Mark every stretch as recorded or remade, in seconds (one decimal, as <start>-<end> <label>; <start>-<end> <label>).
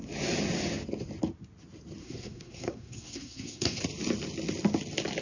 0.0-2.0 recorded; 2.0-3.8 remade; 3.8-5.2 recorded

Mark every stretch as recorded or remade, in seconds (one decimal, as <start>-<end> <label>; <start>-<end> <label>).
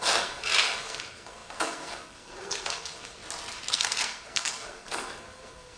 0.0-3.2 remade; 3.2-3.7 recorded; 3.7-5.8 remade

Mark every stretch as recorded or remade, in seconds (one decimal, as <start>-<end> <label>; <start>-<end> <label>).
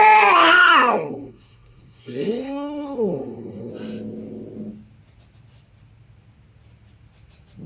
0.0-0.6 recorded; 0.6-3.7 remade; 3.7-7.7 recorded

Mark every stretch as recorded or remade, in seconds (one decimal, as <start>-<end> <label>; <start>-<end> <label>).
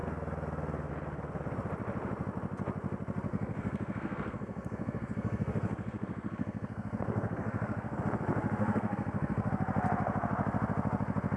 0.0-3.3 recorded; 3.3-8.0 remade; 8.0-8.6 recorded; 8.6-9.5 remade; 9.5-11.4 recorded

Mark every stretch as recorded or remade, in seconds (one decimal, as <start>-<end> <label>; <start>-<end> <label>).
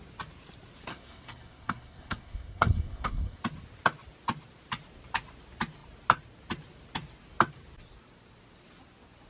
0.0-0.9 recorded; 0.9-3.4 remade; 3.4-9.3 recorded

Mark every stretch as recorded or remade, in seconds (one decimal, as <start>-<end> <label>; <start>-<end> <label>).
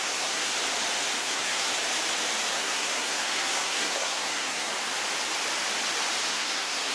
0.0-0.5 remade; 0.5-1.2 recorded; 1.2-1.7 remade; 1.7-2.5 recorded; 2.5-4.7 remade; 4.7-6.3 recorded; 6.3-6.9 remade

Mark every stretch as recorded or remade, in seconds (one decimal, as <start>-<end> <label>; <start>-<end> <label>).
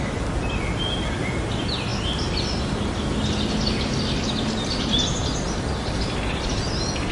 0.0-7.1 recorded